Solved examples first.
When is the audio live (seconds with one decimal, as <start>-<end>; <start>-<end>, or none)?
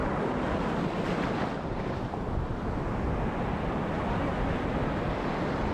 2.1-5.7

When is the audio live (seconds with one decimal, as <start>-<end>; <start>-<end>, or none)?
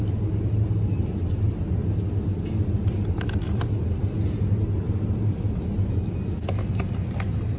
0.0-7.6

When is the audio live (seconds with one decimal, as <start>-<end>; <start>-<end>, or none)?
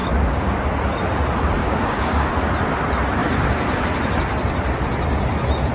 0.6-1.6; 2.3-5.7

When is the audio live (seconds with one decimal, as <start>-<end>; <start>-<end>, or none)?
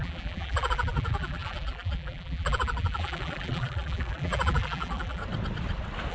5.2-6.1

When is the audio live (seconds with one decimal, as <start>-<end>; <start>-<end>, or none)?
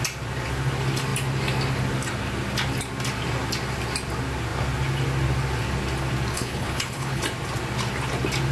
0.0-6.3; 7.2-8.5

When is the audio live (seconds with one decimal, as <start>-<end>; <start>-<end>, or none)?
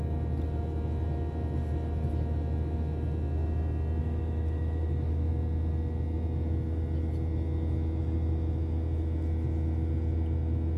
0.0-4.0; 5.3-10.8